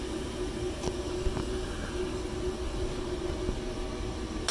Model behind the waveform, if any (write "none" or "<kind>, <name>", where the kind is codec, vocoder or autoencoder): none